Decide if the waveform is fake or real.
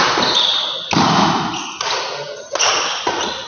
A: real